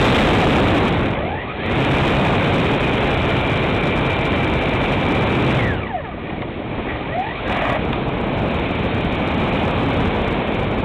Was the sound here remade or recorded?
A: recorded